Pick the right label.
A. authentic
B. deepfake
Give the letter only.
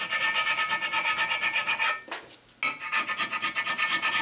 A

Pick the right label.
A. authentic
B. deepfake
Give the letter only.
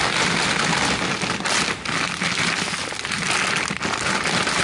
A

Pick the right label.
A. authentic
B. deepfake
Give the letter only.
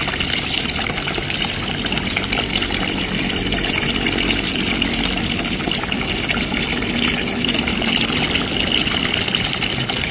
A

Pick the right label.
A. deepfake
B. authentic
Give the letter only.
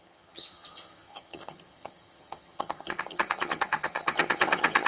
A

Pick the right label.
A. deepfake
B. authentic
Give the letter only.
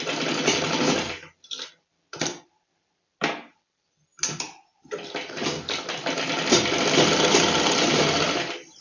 B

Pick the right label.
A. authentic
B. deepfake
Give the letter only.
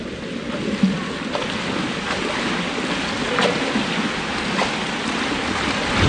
A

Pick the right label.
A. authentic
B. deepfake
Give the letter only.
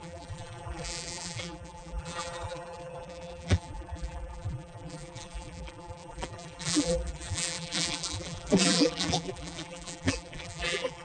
B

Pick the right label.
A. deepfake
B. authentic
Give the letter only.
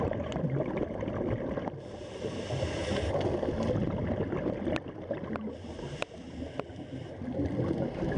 B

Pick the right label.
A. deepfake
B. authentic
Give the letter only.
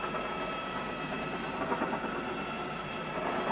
A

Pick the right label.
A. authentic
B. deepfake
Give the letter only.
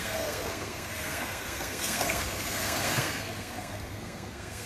B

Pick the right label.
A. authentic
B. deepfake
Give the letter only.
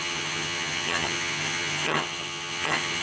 B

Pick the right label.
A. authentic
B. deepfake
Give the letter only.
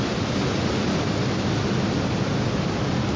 A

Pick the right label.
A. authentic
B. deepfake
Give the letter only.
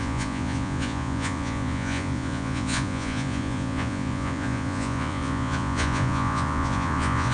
B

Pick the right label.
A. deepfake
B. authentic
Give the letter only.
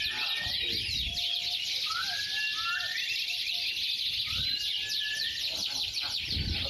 B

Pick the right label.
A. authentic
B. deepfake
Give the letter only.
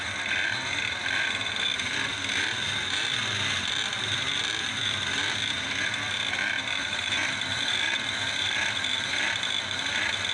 B